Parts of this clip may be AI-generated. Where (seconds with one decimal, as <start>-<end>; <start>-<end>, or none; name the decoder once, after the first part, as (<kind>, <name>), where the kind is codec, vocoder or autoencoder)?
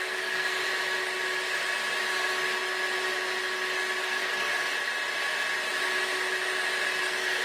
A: 0.0-0.6 (codec, SNAC); 4.0-4.5; 7.0-7.4